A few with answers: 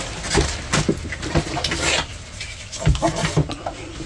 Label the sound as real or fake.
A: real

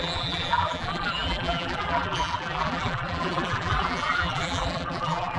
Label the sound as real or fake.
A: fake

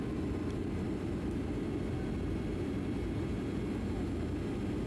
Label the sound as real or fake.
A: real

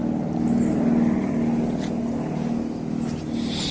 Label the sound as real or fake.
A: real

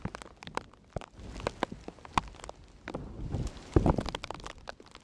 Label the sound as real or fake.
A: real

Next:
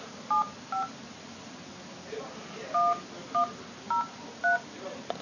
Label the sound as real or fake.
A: real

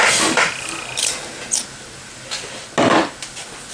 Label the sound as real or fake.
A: real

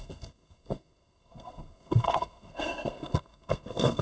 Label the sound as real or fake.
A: fake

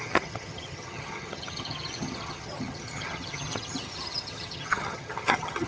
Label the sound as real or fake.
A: fake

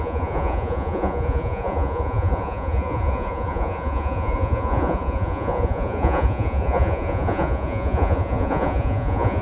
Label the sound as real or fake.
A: fake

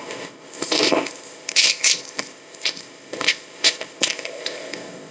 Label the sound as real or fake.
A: fake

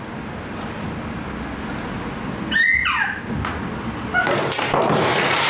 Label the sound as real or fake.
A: real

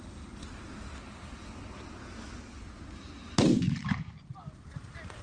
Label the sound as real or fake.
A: real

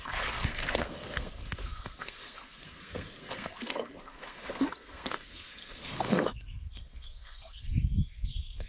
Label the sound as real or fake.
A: fake